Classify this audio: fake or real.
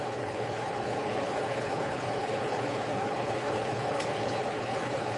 fake